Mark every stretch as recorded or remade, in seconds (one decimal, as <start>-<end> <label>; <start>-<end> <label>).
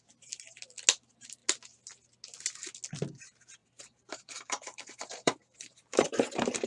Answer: 0.0-3.6 recorded; 3.6-6.7 remade